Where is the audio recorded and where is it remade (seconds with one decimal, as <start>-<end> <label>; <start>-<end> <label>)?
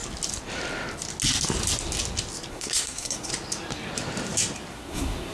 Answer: 0.0-2.5 recorded; 2.5-3.3 remade; 3.3-4.7 recorded; 4.7-5.3 remade